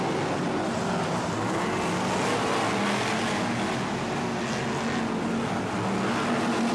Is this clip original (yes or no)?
yes